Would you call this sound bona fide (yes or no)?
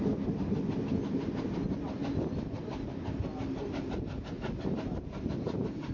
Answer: yes